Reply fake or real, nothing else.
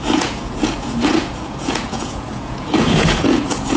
fake